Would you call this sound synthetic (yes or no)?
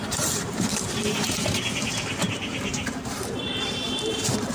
yes